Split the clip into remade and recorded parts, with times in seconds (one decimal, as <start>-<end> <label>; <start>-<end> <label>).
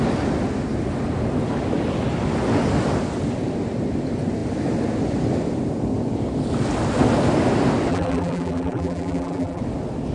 0.0-7.9 recorded; 7.9-9.6 remade; 9.6-10.1 recorded